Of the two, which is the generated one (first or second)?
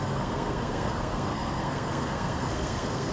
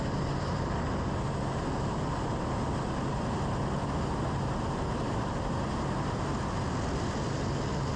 first